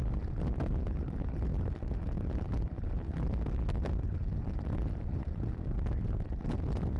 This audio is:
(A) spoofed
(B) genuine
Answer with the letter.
A